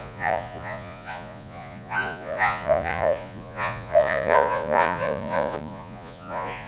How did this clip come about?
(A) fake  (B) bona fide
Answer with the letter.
A